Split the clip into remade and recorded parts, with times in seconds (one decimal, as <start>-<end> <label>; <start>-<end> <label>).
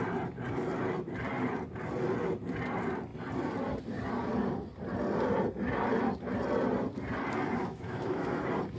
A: 0.0-7.6 recorded; 7.6-8.4 remade; 8.4-8.8 recorded